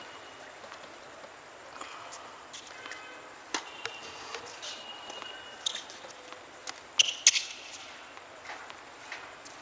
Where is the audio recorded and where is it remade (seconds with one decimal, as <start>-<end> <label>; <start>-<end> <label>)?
0.0-9.6 recorded